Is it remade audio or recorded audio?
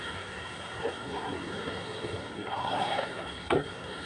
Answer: remade